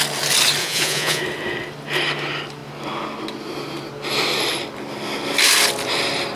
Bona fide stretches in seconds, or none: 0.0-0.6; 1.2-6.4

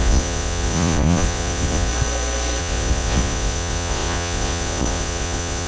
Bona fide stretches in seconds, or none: 1.9-2.6

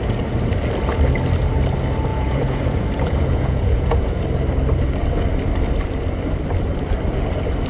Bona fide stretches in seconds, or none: 0.0-2.1; 4.2-7.7

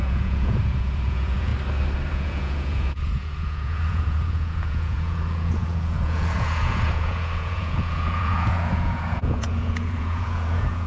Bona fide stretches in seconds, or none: 1.5-2.1

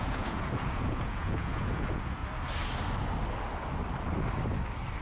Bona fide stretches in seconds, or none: 2.2-5.0

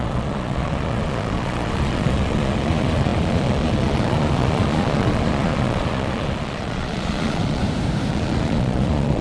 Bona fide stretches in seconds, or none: 7.6-8.1

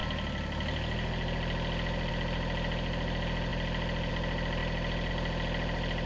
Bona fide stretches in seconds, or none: 0.0-6.1

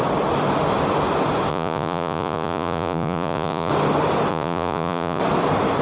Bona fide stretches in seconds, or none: 0.0-1.5; 3.7-4.3; 5.2-5.8